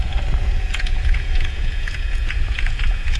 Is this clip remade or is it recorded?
remade